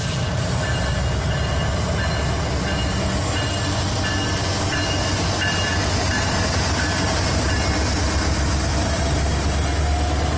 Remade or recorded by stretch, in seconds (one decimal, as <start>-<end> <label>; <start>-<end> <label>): 0.0-8.7 recorded; 8.7-9.2 remade; 9.2-10.4 recorded